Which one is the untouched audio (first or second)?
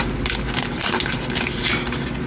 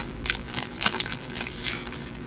first